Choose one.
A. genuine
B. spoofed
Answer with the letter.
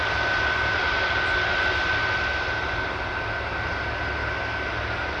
A